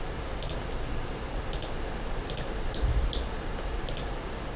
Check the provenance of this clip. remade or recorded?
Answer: recorded